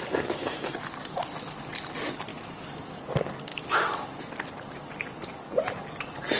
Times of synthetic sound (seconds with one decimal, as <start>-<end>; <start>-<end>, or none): 2.3-3.0; 3.5-4.2